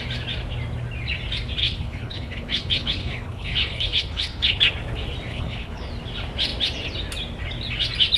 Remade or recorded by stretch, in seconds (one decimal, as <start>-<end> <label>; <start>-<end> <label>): 0.0-1.6 recorded; 1.6-4.6 remade; 4.6-5.3 recorded; 5.3-5.9 remade; 5.9-8.2 recorded